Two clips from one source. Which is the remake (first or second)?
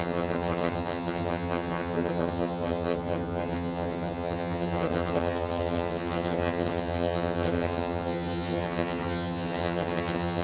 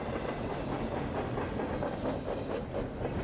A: first